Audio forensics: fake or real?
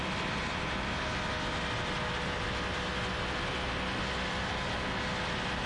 real